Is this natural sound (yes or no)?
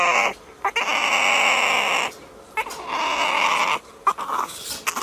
yes